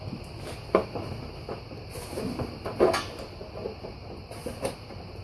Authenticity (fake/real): real